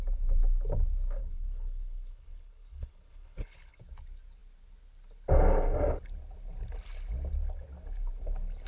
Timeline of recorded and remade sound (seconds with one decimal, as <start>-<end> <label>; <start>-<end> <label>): 0.0-1.2 recorded; 1.2-3.8 remade; 3.8-8.7 recorded